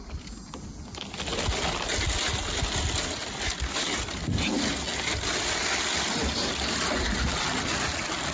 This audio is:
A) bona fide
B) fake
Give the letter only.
A